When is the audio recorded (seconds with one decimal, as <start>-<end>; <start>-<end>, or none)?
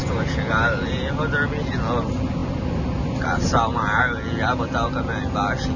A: 0.0-5.8